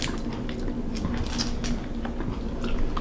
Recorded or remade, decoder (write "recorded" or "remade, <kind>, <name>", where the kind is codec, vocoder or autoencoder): recorded